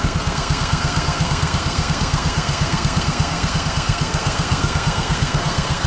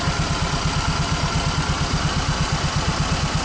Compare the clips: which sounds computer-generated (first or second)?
first